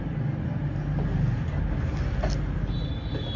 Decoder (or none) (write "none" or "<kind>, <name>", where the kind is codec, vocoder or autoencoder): none